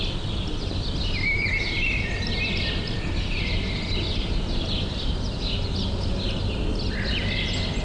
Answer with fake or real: real